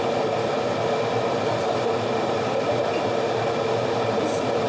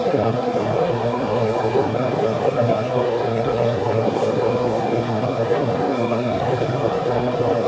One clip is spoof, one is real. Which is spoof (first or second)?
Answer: second